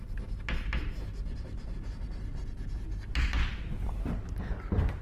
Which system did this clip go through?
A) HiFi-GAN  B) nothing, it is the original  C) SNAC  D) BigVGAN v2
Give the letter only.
B